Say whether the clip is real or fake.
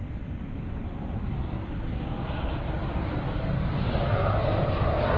real